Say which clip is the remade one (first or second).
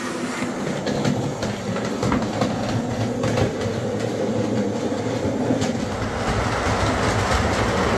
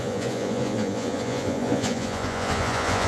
second